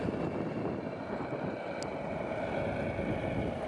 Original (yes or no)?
yes